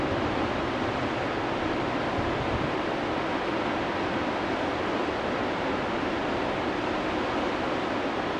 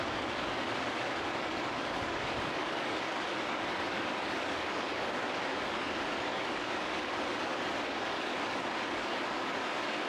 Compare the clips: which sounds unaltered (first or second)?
first